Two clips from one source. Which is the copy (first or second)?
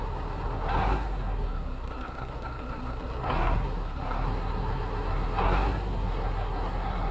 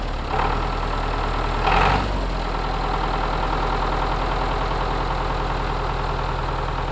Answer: first